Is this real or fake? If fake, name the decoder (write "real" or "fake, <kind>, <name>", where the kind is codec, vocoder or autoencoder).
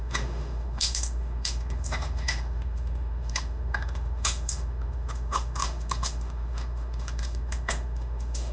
fake, autoencoder, DAC-VAE